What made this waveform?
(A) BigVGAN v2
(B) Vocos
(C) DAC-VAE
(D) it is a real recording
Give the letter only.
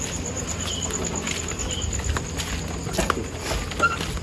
D